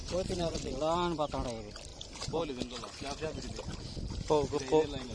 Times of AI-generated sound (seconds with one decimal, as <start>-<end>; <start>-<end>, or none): 0.0-0.8